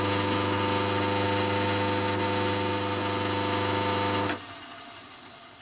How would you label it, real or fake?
real